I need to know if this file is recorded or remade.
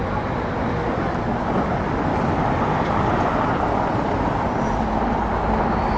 recorded